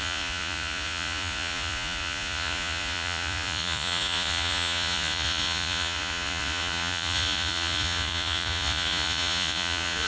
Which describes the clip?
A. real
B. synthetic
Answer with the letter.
B